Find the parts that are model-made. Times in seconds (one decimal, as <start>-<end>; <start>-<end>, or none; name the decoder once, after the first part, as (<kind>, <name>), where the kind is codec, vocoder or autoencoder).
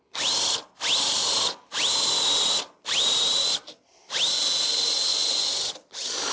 5.1-5.7 (vocoder, Vocos)